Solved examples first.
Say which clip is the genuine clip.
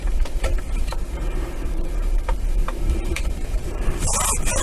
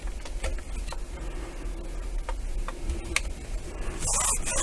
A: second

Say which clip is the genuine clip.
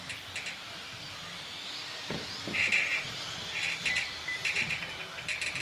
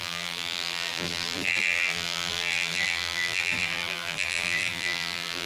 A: first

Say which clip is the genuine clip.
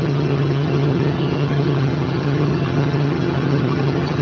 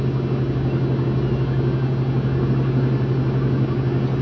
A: second